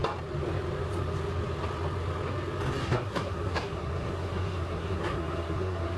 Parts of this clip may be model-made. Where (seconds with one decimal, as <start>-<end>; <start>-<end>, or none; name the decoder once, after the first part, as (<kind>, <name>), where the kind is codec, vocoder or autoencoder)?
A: 2.8-6.0 (codec, SNAC)